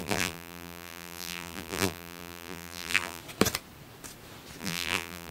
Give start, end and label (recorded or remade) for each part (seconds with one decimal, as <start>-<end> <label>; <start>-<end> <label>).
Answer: 0.0-3.2 remade; 3.2-4.6 recorded; 4.6-5.3 remade